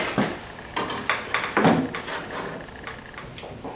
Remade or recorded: recorded